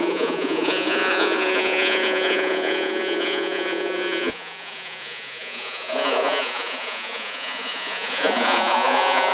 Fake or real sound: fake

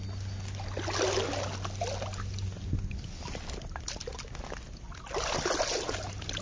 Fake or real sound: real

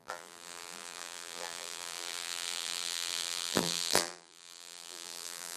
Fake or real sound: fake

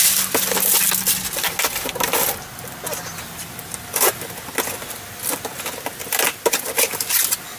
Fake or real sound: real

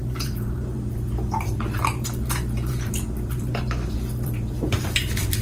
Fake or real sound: fake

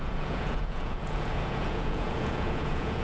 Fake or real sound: fake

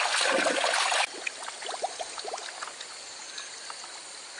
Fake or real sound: real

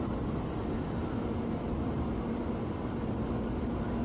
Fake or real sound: real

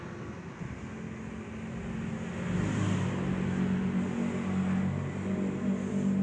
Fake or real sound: real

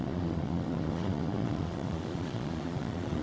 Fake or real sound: fake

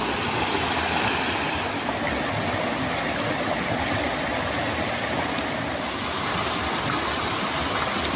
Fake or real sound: real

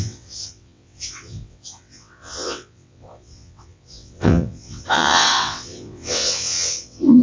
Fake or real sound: fake